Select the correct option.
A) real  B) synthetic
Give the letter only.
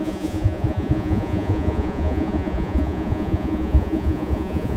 B